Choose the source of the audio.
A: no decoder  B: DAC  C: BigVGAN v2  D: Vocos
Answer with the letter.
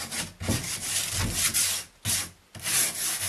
A